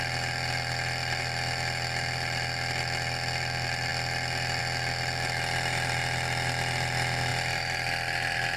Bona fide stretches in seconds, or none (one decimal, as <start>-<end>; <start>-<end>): 0.0-8.6